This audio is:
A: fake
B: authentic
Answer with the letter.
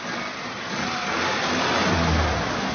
B